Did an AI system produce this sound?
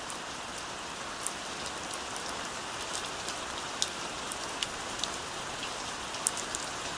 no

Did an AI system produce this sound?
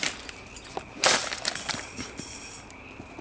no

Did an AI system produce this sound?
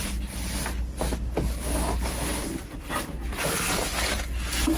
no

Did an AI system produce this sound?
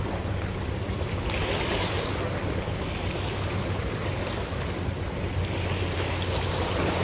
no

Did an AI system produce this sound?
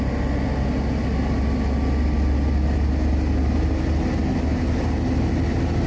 no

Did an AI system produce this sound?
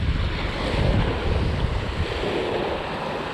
no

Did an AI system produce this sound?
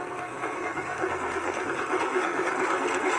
yes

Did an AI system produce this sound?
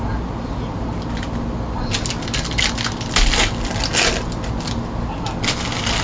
no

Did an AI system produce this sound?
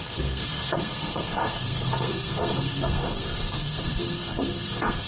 yes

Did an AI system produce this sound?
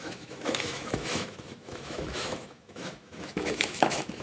yes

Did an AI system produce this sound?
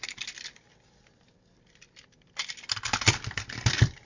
no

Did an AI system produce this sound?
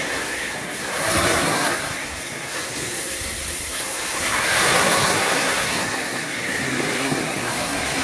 yes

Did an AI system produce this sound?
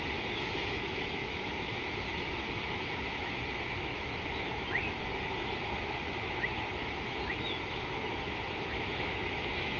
yes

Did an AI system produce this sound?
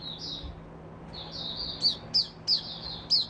no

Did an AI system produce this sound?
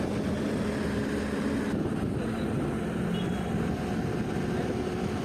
no